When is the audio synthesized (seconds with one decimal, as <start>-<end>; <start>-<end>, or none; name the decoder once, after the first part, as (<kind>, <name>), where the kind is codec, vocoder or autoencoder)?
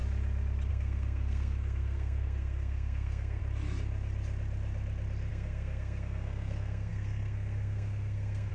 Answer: 0.7-3.4 (codec, SNAC); 5.3-8.5